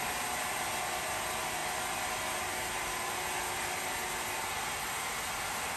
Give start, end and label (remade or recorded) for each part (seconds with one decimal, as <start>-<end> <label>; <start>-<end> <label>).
0.0-5.8 recorded